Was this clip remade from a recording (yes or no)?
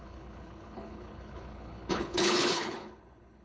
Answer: yes